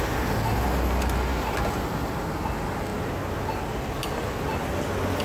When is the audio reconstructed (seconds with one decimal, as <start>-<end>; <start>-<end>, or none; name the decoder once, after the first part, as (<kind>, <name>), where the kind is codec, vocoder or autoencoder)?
none